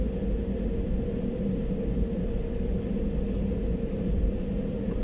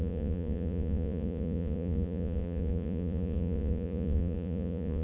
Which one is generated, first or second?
second